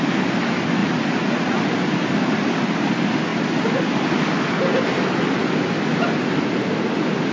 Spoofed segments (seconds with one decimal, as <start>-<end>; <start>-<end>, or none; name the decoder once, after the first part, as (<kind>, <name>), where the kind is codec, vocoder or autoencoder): none